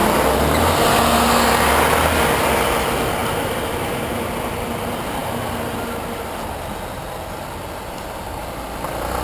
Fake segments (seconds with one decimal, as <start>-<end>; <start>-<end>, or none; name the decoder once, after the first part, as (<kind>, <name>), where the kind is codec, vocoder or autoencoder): none

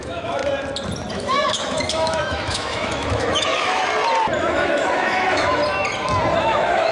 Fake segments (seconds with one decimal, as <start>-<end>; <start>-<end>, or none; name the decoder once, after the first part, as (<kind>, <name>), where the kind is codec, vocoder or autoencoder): 0.0-0.4 (autoencoder, DAC-VAE); 1.1-3.8; 4.4-5.6; 6.4-6.9

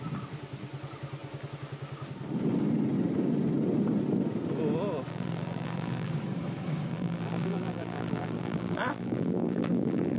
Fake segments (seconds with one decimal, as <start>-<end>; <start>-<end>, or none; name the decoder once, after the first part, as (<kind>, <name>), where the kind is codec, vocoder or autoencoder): 5.1-6.1 (vocoder, BigVGAN v2); 6.9-10.2

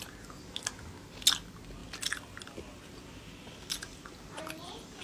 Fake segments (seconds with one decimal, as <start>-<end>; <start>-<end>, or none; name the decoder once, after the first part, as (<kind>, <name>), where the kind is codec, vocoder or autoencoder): none

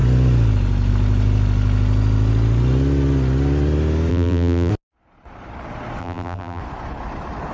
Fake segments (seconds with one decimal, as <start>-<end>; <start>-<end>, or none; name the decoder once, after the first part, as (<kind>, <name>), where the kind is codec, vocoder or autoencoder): 4.1-4.7 (vocoder, BigVGAN v2); 6.0-6.6

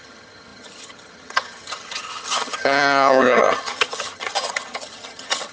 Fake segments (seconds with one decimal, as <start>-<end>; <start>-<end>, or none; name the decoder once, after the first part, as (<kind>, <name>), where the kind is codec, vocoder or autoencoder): 0.0-5.5 (vocoder, HiFi-GAN)

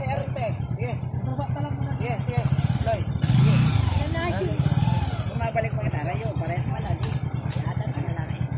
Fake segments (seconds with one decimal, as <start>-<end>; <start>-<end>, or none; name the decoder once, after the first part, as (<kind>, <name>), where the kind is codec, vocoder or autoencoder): none

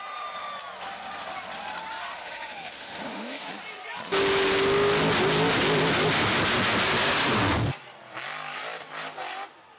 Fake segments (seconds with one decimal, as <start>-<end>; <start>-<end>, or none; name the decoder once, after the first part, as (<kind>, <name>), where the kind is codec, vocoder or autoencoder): 2.0-3.4 (autoencoder, DAC-VAE)